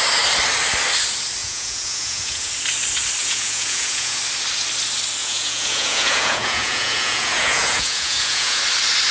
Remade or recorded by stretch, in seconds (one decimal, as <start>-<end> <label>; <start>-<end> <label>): 0.0-1.4 recorded; 1.4-2.5 remade; 2.5-3.2 recorded; 3.2-4.2 remade; 4.2-5.2 recorded; 5.2-8.6 remade; 8.6-9.1 recorded